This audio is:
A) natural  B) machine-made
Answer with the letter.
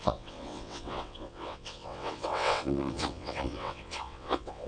B